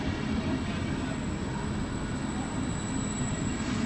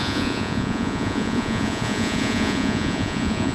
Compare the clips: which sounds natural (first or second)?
first